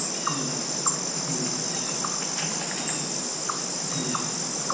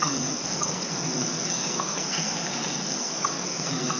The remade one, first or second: second